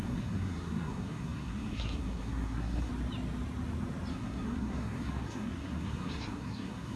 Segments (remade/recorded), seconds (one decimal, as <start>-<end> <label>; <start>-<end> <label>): 0.0-2.9 remade; 2.9-4.1 recorded; 4.1-7.0 remade